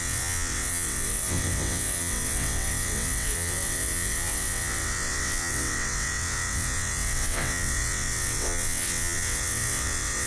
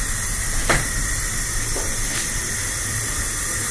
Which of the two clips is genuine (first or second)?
second